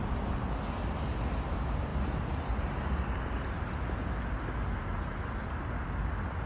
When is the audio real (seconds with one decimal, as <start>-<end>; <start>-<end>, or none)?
0.0-6.5